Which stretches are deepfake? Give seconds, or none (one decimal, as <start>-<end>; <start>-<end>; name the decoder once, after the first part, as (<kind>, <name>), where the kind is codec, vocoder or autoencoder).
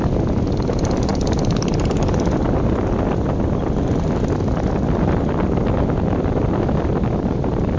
none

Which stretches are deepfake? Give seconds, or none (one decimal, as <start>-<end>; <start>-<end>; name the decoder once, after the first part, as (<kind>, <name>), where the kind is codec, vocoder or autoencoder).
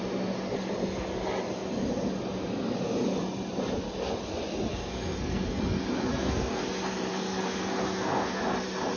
4.7-5.6 (codec, SNAC); 6.1-6.6; 7.1-8.4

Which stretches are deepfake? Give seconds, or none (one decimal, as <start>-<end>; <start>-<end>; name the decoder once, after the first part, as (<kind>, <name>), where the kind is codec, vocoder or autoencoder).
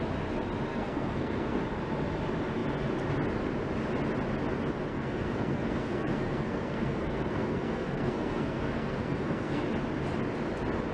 0.7-1.6 (codec, SNAC); 4.9-9.6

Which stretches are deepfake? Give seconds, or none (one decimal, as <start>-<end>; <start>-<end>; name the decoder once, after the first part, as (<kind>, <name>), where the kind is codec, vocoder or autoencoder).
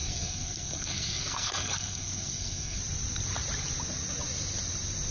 0.0-2.8 (codec, SNAC)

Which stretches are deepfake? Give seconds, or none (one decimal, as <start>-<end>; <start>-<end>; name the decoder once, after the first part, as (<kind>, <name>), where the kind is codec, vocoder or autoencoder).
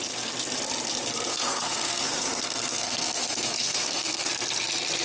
1.3-4.3 (codec, SNAC)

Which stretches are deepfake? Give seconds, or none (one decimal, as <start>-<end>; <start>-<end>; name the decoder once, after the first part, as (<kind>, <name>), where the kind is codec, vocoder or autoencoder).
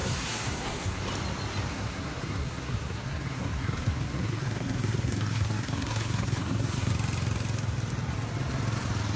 0.0-1.0 (codec, SNAC); 1.7-6.9